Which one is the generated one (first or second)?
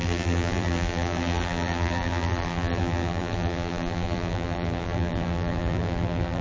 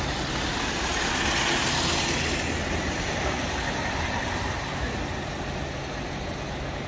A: first